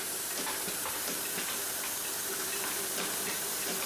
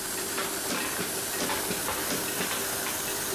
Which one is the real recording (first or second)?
second